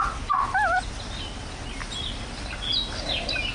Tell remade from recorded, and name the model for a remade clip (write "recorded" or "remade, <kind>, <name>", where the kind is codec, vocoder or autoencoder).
recorded